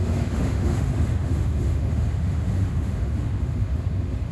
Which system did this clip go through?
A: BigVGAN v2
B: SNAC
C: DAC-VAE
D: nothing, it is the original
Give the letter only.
C